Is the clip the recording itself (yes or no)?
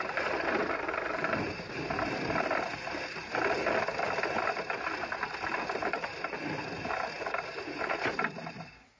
yes